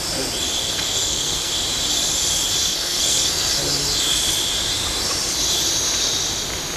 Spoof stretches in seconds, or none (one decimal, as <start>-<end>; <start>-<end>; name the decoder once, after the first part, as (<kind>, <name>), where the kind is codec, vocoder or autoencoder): 0.6-1.5 (codec, SNAC); 2.6-3.5